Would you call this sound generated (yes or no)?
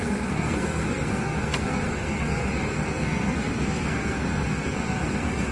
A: yes